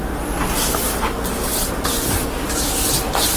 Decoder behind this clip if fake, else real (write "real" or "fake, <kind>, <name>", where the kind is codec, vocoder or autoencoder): real